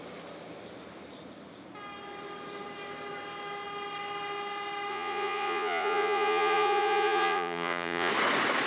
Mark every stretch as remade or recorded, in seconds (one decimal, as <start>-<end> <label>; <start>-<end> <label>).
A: 0.0-4.9 recorded; 4.9-8.1 remade; 8.1-8.7 recorded